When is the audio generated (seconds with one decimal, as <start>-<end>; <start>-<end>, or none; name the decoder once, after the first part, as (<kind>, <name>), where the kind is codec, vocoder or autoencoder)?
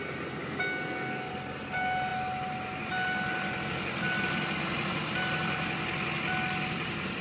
0.4-1.3 (codec, DAC)